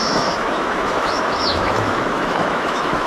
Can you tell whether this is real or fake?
fake